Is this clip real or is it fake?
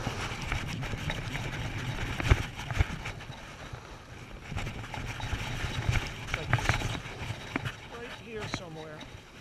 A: real